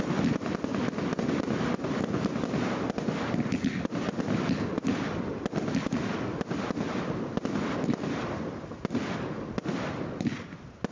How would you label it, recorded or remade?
recorded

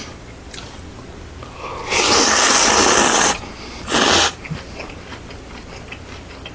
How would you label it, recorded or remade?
recorded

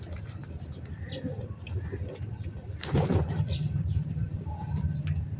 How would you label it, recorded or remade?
remade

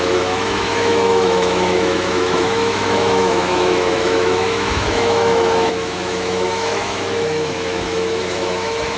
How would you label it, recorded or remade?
remade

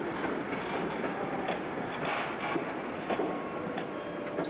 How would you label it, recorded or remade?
recorded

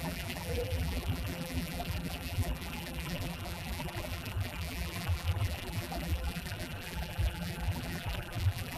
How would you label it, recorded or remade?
remade